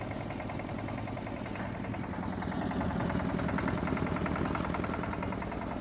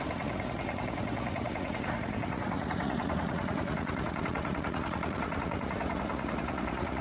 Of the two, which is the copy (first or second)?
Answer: second